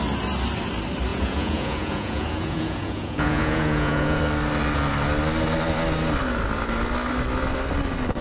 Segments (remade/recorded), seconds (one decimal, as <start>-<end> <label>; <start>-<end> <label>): 0.0-1.1 recorded; 1.1-4.2 remade; 4.2-8.2 recorded